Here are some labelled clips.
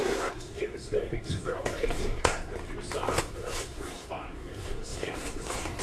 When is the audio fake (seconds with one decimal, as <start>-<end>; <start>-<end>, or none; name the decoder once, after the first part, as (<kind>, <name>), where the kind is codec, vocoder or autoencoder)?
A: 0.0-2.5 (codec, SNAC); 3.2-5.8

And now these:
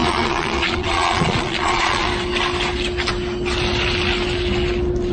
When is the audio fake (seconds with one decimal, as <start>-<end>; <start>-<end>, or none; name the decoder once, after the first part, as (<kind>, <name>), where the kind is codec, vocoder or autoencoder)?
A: 0.0-2.1 (vocoder, Vocos)

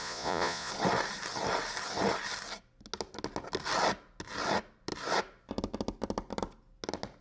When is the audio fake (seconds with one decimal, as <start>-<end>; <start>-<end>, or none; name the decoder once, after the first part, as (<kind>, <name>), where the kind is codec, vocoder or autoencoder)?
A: 0.0-0.7 (vocoder, Vocos)

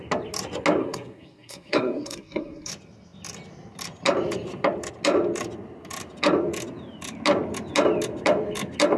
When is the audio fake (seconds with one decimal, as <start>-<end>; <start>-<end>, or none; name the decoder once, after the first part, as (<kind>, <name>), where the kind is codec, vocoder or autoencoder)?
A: 0.8-2.7 (codec, SNAC)